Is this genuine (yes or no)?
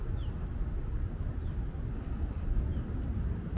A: yes